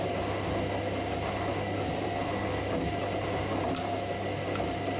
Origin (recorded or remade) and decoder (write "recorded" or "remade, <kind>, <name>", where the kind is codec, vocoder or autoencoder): recorded